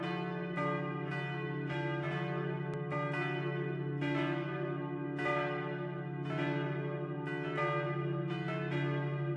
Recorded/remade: recorded